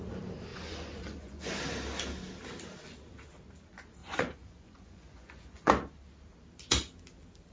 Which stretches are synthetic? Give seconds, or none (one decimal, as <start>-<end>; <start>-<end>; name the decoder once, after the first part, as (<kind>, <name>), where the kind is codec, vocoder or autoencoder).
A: 0.5-1.5 (vocoder, Vocos); 4.0-5.7